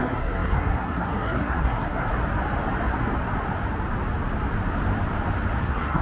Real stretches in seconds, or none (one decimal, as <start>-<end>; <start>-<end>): 2.1-5.6